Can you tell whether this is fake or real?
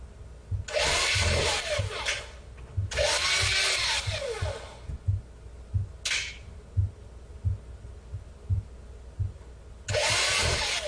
real